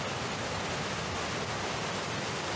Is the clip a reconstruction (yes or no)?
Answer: no